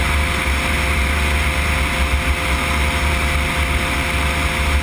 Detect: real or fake real